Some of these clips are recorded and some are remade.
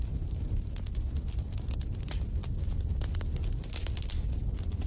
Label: recorded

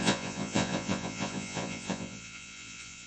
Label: remade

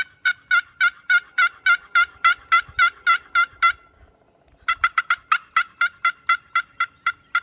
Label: recorded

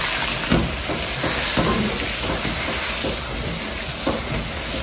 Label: recorded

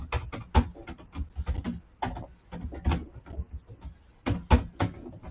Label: recorded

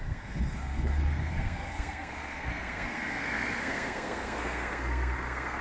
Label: remade